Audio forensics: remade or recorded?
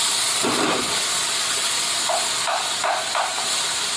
recorded